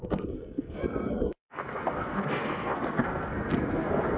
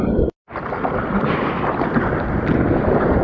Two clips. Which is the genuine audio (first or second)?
second